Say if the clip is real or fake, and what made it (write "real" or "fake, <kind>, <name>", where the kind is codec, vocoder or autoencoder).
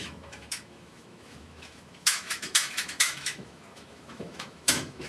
fake, autoencoder, DAC-VAE